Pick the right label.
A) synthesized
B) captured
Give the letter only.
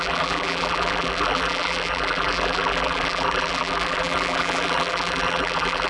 A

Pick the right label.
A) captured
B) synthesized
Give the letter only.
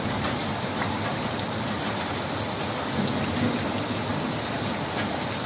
A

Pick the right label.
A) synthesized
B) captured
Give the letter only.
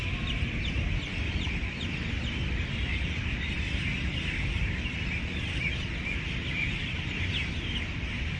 B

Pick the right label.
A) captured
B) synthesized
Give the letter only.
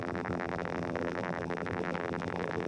B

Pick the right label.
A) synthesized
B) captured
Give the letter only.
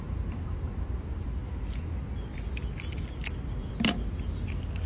B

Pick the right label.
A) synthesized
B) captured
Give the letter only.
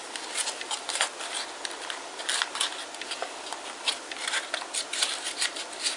B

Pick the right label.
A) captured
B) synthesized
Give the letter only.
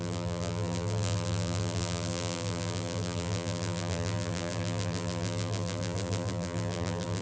B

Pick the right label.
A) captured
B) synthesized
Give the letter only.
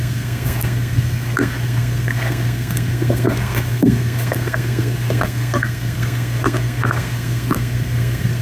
B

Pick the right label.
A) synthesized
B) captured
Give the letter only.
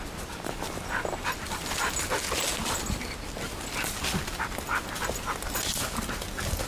B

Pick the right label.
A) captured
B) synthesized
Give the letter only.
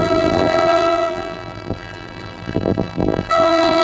B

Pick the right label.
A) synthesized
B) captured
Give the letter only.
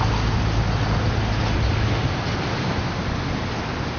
B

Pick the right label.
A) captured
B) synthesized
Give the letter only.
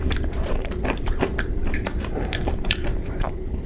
B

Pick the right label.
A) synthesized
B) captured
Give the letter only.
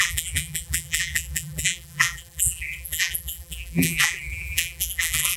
A